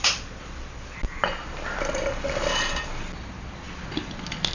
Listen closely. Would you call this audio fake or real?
real